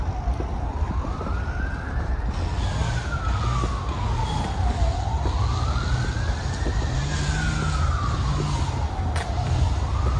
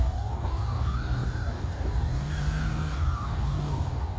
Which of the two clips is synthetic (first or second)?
second